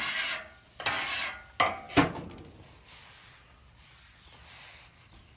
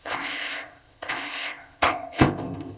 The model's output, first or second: second